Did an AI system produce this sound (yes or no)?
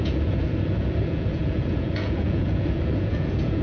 yes